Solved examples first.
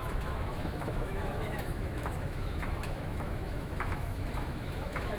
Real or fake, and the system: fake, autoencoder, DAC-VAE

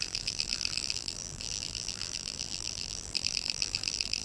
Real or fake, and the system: fake, vocoder, BigVGAN v2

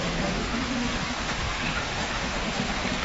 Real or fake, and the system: fake, autoencoder, DAC-VAE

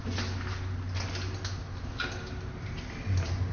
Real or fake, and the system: real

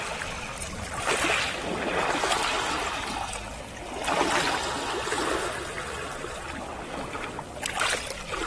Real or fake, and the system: real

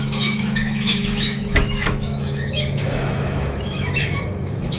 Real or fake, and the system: fake, autoencoder, DAC-VAE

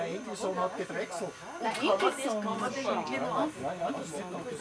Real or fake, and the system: real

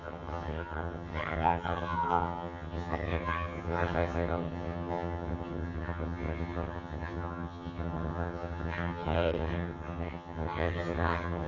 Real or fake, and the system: fake, vocoder, HiFi-GAN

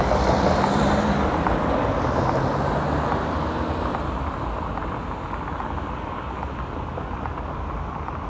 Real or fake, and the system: real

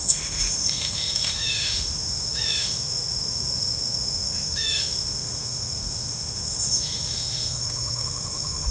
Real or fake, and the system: fake, autoencoder, DAC-VAE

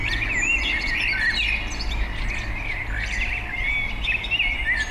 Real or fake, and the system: real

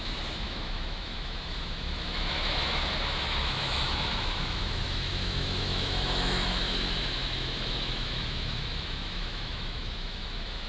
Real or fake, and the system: fake, autoencoder, DAC-VAE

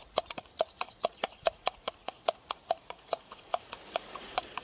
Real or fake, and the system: fake, vocoder, Vocos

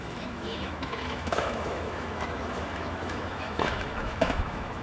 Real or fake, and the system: fake, autoencoder, DAC-VAE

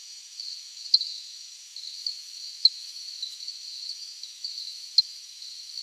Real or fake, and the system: fake, autoencoder, DAC-VAE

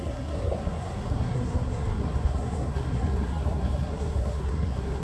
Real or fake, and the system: fake, codec, SNAC